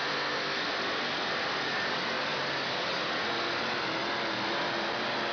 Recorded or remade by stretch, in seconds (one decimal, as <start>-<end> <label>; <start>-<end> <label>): 0.0-0.6 remade; 0.6-5.3 recorded